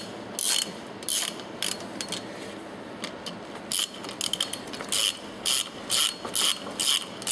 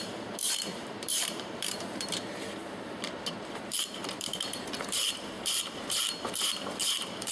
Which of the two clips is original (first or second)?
first